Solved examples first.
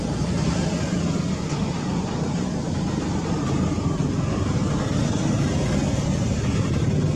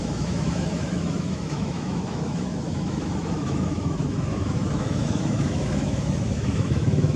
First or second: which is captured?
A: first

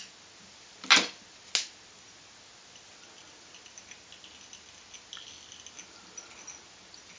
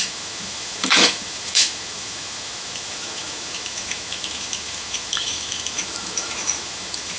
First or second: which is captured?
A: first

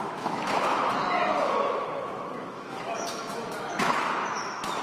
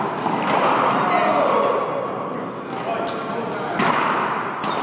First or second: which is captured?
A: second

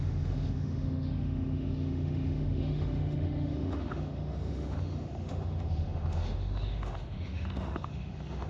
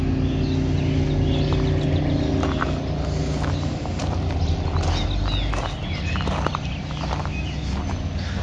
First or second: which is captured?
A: second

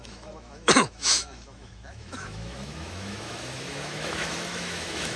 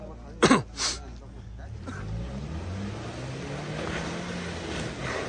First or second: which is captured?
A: second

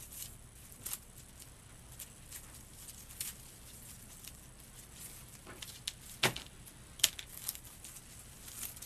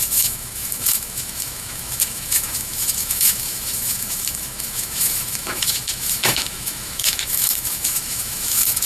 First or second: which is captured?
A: first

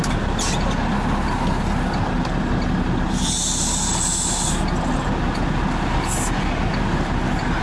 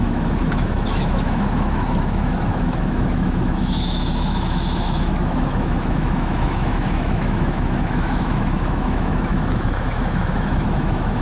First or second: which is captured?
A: first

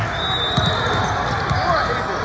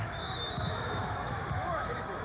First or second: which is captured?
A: first